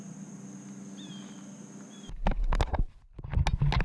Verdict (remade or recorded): recorded